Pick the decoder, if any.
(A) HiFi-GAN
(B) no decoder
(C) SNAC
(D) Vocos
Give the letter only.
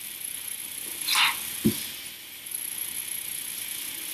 B